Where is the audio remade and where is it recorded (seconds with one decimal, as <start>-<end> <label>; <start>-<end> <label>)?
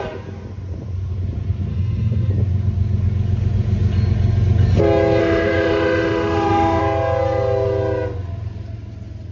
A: 0.0-1.7 recorded; 1.7-2.3 remade; 2.3-5.2 recorded; 5.2-6.8 remade; 6.8-9.3 recorded